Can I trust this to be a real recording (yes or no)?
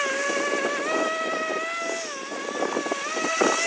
yes